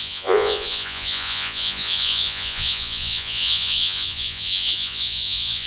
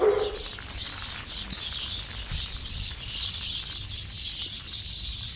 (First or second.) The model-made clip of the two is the first